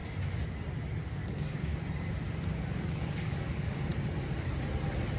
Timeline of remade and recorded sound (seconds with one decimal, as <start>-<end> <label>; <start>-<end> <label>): 0.0-1.1 recorded; 1.1-1.7 remade; 1.7-2.7 recorded; 2.7-3.9 remade; 3.9-5.2 recorded